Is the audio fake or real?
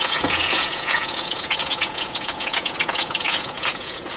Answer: fake